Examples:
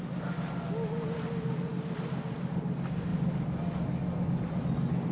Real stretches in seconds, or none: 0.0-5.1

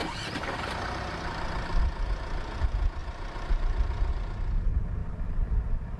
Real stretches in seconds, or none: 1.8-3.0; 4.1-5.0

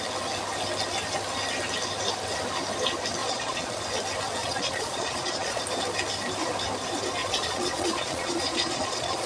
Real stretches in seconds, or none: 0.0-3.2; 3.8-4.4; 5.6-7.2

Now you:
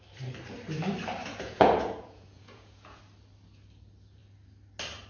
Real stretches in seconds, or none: 0.0-1.2; 3.0-5.1